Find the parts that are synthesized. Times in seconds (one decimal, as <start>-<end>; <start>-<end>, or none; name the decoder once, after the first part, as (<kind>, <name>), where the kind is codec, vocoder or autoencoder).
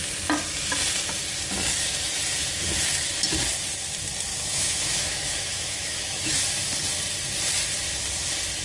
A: 4.3-6.4 (autoencoder, DAC-VAE)